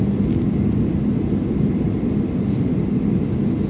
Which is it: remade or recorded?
recorded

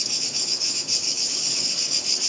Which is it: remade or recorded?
remade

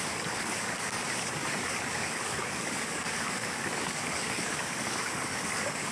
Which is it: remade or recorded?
remade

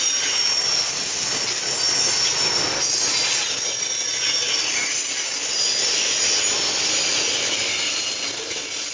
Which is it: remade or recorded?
recorded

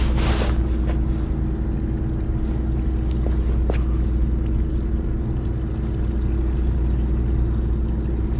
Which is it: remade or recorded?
recorded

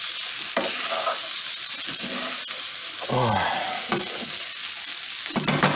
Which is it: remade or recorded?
recorded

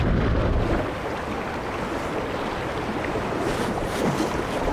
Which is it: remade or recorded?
recorded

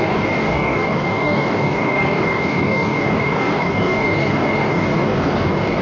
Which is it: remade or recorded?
remade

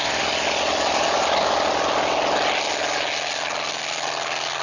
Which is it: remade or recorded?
recorded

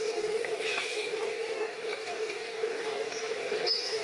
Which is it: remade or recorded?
remade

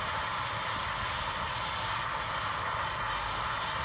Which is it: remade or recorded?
recorded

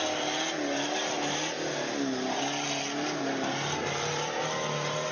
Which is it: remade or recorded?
recorded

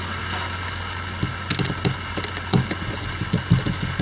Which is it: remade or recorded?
recorded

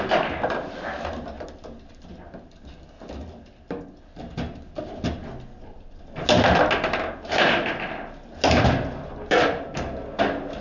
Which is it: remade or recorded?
recorded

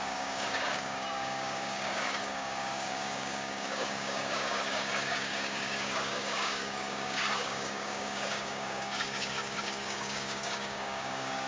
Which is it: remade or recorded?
remade